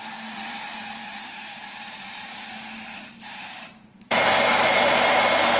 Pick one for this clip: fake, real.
fake